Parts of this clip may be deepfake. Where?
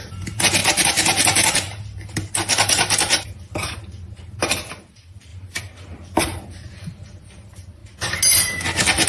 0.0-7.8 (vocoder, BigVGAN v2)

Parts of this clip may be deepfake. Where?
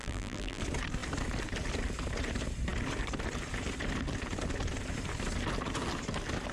0.0-0.6 (vocoder, BigVGAN v2)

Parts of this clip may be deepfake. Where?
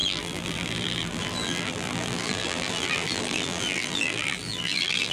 0.0-5.1 (vocoder, BigVGAN v2)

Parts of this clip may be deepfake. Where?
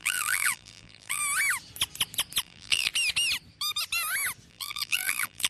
0.0-1.2 (vocoder, BigVGAN v2); 2.4-2.9; 4.5-5.5